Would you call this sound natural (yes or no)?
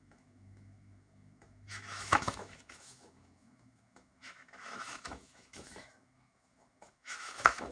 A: no